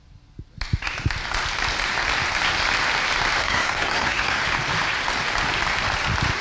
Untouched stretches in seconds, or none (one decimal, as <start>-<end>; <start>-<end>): 0.0-3.4; 4.4-6.4